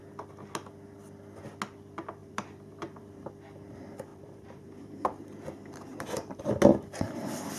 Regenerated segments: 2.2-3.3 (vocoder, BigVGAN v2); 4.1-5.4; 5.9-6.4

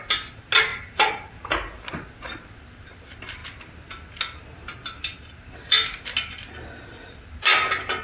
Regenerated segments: 0.7-1.9 (vocoder, BigVGAN v2)

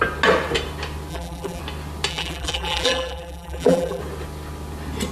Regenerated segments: 1.1-1.6 (vocoder, BigVGAN v2); 2.1-4.0

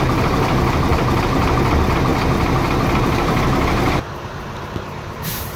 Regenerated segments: 0.0-2.1 (vocoder, BigVGAN v2); 3.0-5.6

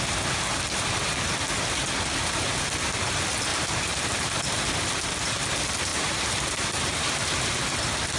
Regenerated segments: 3.5-4.3 (vocoder, BigVGAN v2); 5.9-7.1

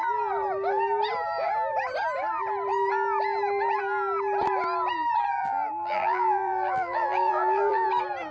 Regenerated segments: 5.4-7.9 (vocoder, BigVGAN v2)

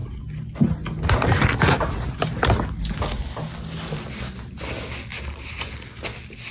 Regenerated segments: 5.1-5.7 (vocoder, BigVGAN v2)

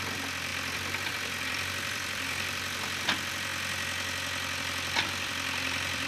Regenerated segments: 0.0-3.5 (vocoder, BigVGAN v2); 4.6-6.1